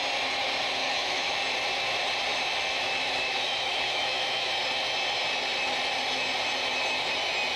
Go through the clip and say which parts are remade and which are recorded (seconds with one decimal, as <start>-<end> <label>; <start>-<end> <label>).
0.0-0.8 recorded; 0.8-1.4 remade; 1.4-2.3 recorded; 2.3-4.5 remade; 4.5-7.6 recorded